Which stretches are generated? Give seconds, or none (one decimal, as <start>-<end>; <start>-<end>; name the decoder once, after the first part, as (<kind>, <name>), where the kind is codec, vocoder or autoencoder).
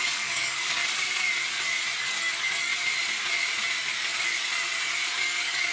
0.0-0.8 (codec, DAC); 2.0-2.7; 3.8-4.5; 5.2-5.7